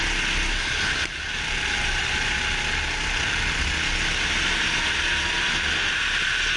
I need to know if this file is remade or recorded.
recorded